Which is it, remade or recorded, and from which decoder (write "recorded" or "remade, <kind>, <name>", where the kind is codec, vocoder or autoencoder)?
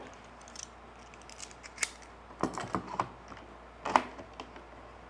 recorded